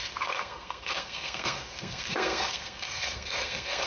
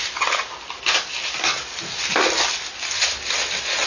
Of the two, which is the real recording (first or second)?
second